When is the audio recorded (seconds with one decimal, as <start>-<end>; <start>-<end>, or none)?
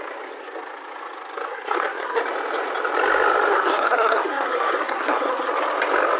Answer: 0.0-1.5; 2.2-3.5; 5.5-6.2